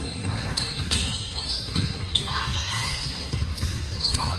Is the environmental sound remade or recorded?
remade